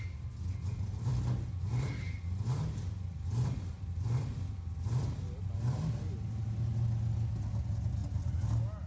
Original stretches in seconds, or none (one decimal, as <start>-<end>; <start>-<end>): 0.0-8.9